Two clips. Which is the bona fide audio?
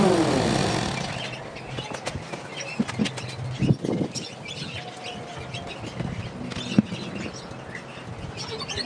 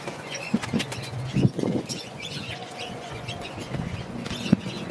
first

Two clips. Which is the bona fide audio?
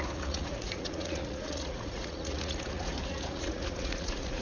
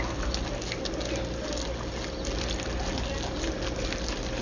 second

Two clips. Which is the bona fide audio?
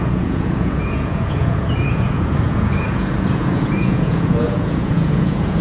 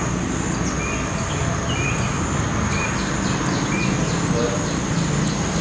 second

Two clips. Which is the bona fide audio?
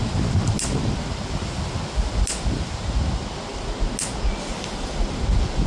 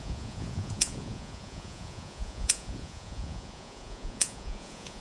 first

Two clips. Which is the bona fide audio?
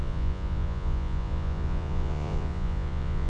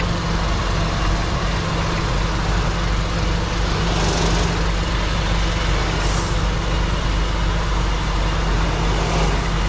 second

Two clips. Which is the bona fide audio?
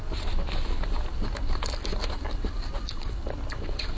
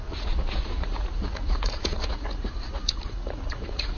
first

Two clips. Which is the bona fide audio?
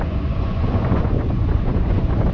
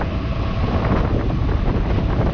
second